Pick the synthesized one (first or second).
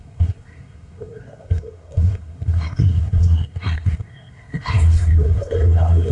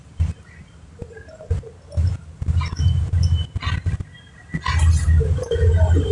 first